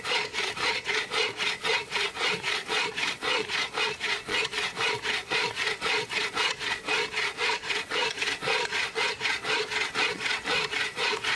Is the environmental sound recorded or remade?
remade